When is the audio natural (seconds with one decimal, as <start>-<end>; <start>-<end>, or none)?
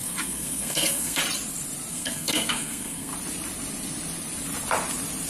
1.2-1.9; 3.1-5.3